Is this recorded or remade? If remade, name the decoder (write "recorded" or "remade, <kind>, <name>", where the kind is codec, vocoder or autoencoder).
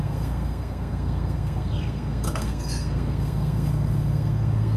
remade, codec, SNAC